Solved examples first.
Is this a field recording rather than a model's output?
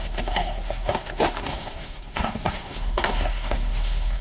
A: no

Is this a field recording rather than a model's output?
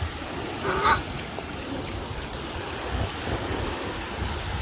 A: yes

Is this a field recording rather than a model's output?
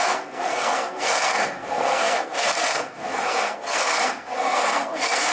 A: no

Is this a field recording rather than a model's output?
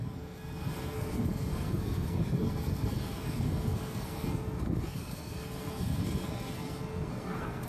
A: no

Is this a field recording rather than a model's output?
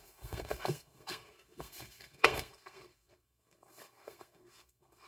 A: no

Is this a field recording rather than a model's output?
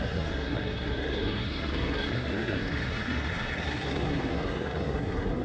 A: no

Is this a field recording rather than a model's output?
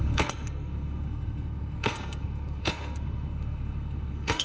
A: no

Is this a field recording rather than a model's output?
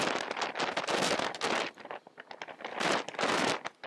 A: yes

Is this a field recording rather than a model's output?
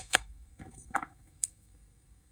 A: no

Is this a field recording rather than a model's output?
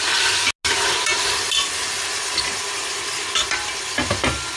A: yes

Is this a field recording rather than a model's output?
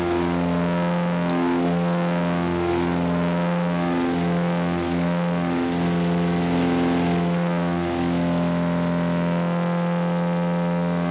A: yes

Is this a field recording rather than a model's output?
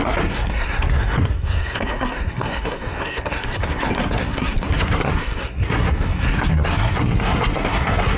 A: no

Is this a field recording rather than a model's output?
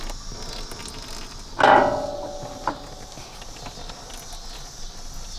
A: yes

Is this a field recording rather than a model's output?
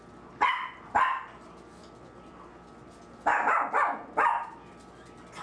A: yes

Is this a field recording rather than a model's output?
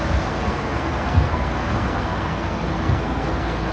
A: no